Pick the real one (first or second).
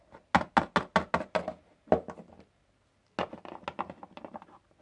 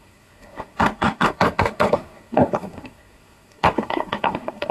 first